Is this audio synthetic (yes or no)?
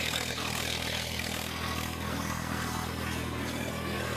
yes